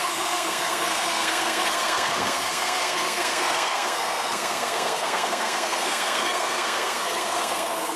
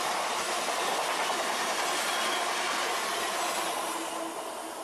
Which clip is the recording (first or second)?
second